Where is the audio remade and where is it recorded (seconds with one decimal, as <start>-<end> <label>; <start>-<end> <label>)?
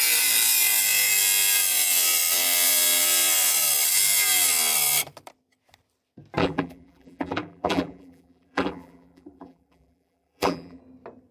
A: 0.0-6.4 recorded; 6.4-10.8 remade; 10.8-11.3 recorded